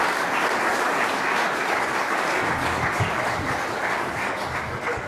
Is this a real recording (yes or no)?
no